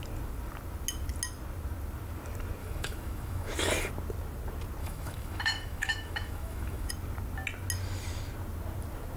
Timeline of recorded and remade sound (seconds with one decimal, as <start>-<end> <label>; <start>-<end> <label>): 0.0-2.6 recorded; 2.6-3.9 remade; 3.9-4.8 recorded; 4.8-6.9 remade; 6.9-9.2 recorded